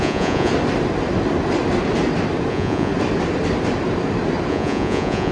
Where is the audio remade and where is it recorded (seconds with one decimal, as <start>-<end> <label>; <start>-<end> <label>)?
0.0-0.5 remade; 0.5-2.5 recorded; 2.5-2.9 remade; 2.9-4.5 recorded; 4.5-5.3 remade